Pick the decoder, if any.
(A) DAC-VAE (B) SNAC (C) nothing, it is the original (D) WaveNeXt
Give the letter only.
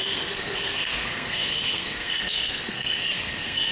B